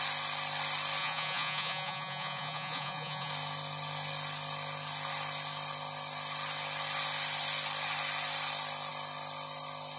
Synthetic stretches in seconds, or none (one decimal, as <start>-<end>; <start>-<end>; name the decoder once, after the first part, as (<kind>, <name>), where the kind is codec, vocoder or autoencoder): 1.0-3.3 (vocoder, Vocos)